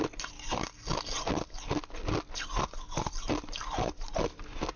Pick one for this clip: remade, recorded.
recorded